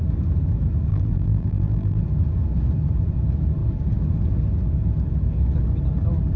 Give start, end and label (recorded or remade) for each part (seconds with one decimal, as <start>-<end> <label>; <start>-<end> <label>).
0.0-0.9 recorded; 0.9-2.0 remade; 2.0-6.4 recorded